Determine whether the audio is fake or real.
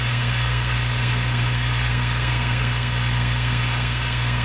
fake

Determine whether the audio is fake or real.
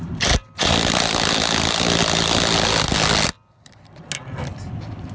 real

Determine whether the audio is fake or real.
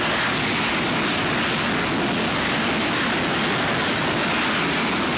real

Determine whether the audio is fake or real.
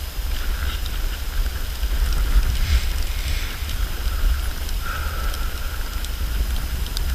real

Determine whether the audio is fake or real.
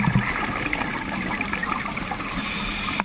real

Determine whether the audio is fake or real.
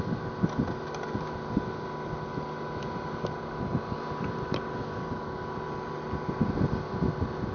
real